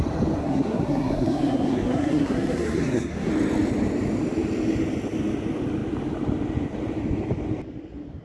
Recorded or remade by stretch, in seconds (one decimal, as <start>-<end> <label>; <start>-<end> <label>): 0.0-0.4 recorded; 0.4-3.3 remade; 3.3-8.2 recorded